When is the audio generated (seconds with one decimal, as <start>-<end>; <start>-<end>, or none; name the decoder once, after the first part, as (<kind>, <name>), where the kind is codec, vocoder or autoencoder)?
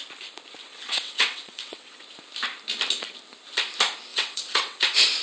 0.7-2.0 (vocoder, WaveNeXt); 4.1-4.8